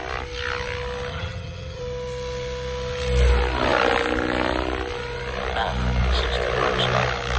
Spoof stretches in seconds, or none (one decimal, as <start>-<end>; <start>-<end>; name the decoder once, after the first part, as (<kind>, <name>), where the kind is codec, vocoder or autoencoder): 1.1-1.8 (vocoder, HiFi-GAN)